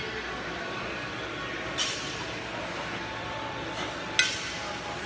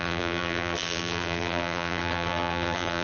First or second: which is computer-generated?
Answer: second